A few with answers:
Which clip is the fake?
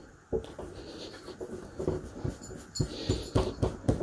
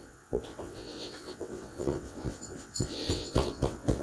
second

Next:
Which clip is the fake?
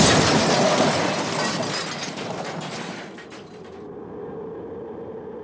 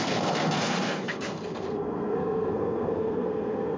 second